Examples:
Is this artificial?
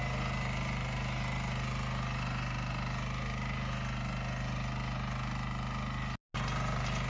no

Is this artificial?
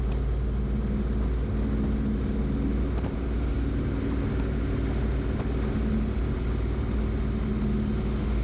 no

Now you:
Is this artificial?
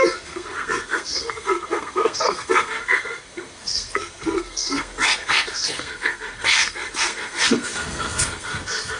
yes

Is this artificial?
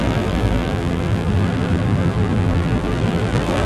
yes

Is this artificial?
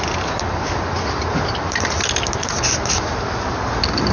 no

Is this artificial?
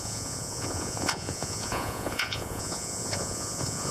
yes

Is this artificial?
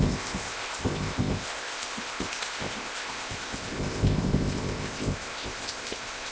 yes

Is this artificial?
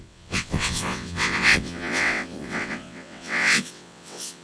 yes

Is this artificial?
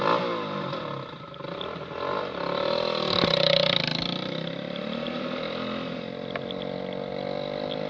no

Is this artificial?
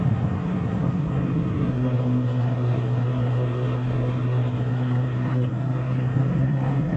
yes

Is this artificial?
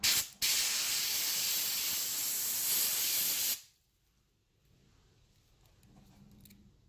no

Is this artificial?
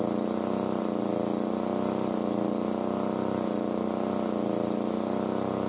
no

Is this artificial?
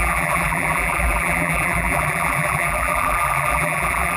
yes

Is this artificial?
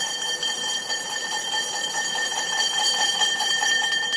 yes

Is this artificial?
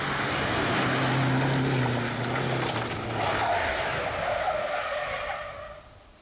no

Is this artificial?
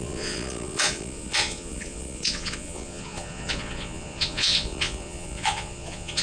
yes